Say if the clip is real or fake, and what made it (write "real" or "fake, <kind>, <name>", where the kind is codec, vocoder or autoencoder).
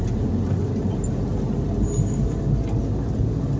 real